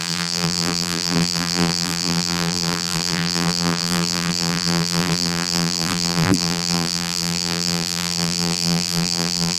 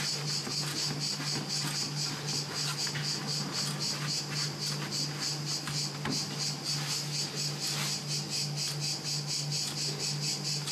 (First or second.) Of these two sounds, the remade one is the first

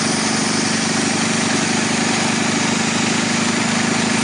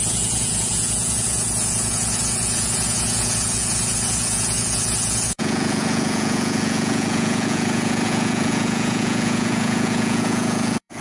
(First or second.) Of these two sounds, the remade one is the second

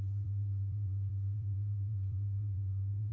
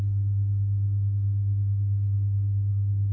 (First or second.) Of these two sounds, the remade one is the first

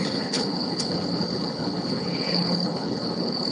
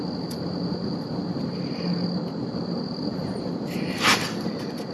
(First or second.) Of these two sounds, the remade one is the first